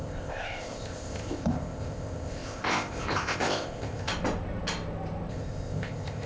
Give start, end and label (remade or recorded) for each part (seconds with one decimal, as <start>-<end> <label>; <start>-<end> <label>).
0.0-4.1 remade; 4.1-5.3 recorded; 5.3-6.3 remade